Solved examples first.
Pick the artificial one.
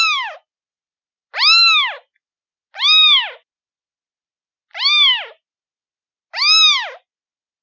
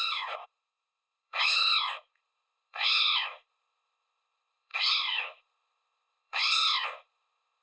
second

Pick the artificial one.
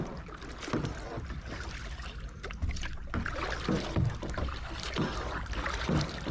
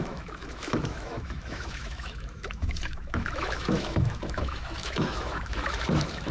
second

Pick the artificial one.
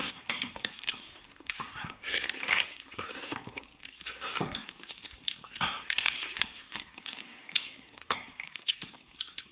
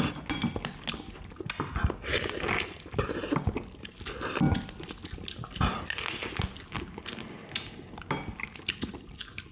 first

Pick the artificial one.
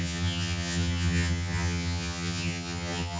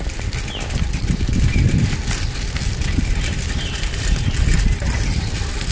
first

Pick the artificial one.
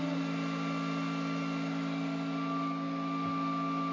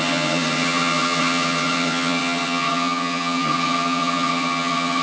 second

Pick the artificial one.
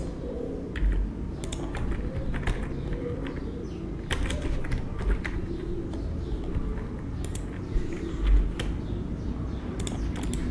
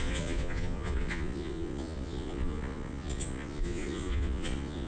second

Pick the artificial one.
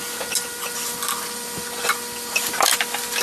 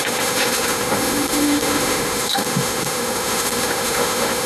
second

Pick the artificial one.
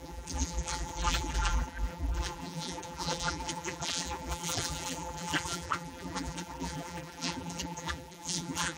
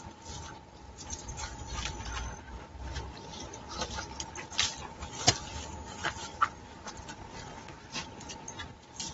first